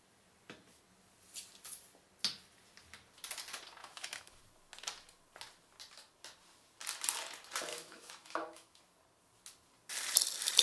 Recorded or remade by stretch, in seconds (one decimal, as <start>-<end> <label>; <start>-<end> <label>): 0.0-3.8 recorded; 3.8-4.4 remade; 4.4-7.7 recorded; 7.7-8.8 remade; 8.8-10.6 recorded